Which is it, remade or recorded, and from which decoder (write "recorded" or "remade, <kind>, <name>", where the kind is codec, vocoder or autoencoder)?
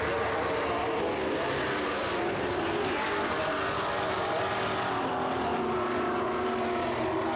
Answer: recorded